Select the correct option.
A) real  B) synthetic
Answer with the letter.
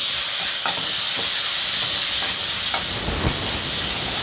A